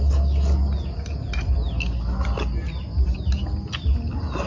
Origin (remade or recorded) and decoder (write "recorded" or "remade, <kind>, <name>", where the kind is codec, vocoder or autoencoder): recorded